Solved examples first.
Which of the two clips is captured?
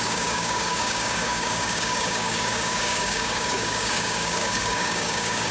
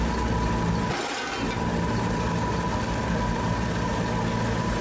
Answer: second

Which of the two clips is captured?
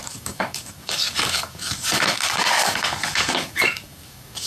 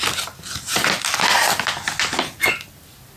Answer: second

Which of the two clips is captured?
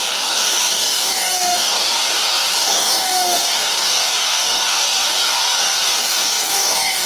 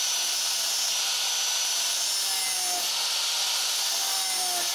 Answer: second